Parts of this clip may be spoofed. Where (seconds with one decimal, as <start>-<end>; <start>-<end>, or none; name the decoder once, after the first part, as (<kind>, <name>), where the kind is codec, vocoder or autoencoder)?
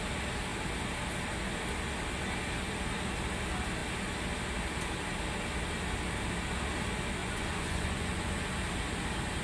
7.2-8.4 (vocoder, Vocos)